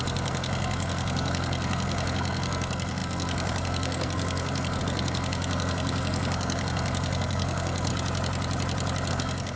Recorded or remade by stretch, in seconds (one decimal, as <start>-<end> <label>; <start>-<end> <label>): 0.0-7.9 remade; 7.9-9.1 recorded; 9.1-9.6 remade